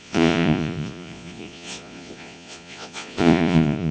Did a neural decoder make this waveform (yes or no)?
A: yes